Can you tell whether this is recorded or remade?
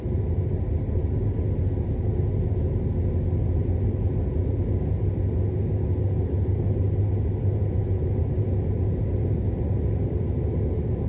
recorded